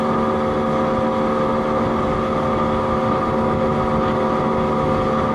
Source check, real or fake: real